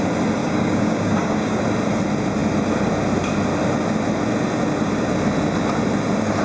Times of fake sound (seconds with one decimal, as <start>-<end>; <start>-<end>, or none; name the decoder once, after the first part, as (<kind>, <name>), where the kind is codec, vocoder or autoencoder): 0.4-1.6 (codec, DAC)